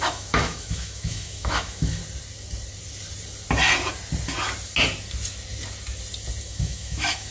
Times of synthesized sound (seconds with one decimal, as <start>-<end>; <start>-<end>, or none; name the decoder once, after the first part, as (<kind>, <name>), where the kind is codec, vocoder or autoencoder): 0.0-2.0 (autoencoder, DAC-VAE); 6.4-7.3